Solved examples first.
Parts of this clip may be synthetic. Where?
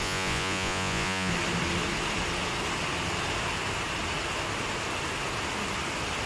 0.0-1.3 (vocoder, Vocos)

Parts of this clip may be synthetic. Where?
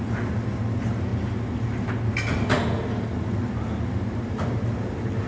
none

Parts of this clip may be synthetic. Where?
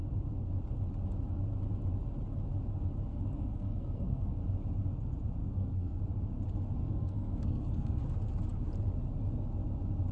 3.1-4.4 (codec, SNAC); 5.4-6.0; 6.8-8.0